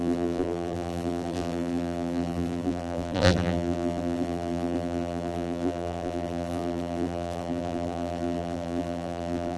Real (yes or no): no